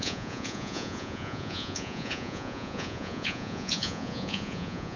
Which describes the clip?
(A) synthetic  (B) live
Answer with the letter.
A